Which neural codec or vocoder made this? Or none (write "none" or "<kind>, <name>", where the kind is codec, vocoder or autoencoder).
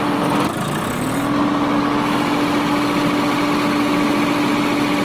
none